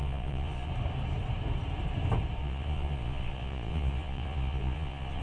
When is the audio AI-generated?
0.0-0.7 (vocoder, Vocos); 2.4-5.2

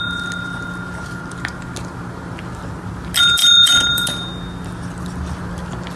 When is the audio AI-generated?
3.4-4.2 (vocoder, BigVGAN v2)

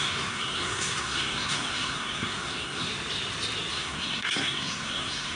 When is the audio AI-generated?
0.0-2.9 (codec, SNAC); 3.7-5.4

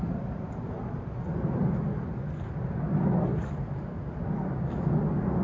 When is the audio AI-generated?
none